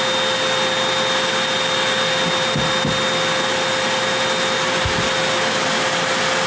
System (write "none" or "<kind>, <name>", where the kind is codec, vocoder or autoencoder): none